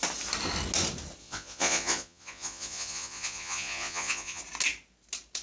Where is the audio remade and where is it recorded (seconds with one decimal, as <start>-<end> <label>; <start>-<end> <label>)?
0.0-1.2 recorded; 1.2-4.4 remade; 4.4-5.4 recorded